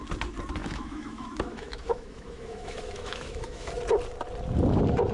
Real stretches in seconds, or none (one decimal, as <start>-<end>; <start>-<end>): 0.0-0.6; 3.7-5.1

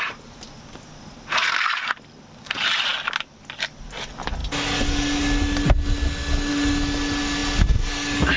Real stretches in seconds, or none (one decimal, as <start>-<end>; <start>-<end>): 0.0-8.4

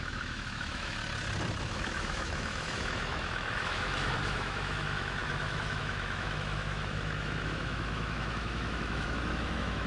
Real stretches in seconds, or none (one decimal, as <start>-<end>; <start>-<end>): 1.0-1.6

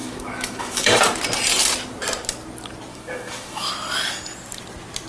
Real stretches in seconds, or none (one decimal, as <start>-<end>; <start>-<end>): 1.0-2.9; 3.7-5.1

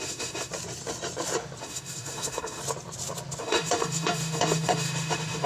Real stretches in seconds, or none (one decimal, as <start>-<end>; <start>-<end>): 0.5-1.6; 2.6-3.4

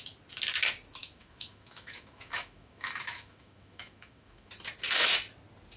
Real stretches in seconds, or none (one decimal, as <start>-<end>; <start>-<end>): 0.0-1.0; 4.5-5.8